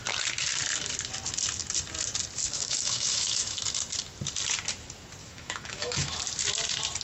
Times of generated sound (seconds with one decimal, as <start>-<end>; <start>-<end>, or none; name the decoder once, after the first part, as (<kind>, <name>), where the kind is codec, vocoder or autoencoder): 2.4-3.6 (autoencoder, DAC-VAE); 5.2-6.2